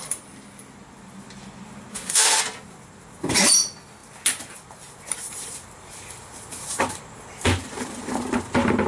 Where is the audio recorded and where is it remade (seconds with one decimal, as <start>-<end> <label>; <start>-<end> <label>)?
0.0-1.9 recorded; 1.9-2.4 remade; 2.4-8.9 recorded